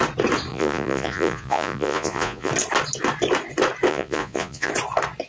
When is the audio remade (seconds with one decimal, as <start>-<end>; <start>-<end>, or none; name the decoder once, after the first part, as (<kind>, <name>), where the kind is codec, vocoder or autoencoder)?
0.5-2.5 (vocoder, Vocos); 3.9-4.7